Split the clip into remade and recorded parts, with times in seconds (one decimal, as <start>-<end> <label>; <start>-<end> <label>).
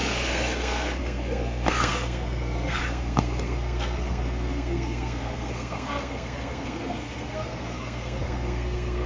0.0-9.1 remade